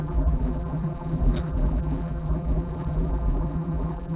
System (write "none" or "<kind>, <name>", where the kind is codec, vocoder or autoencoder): vocoder, BigVGAN v2